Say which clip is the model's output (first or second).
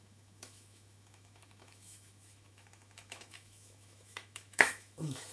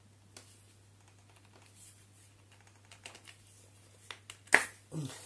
first